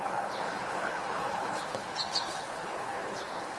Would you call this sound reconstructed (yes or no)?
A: yes